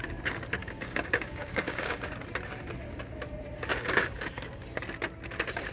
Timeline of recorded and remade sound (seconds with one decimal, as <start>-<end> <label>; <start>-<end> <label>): 0.0-0.6 recorded; 0.6-2.1 remade; 2.1-3.7 recorded; 3.7-4.5 remade; 4.5-5.7 recorded